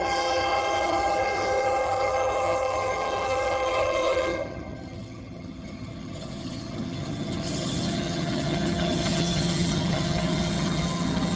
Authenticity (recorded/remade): remade